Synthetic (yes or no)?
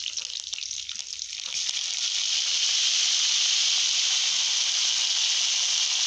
no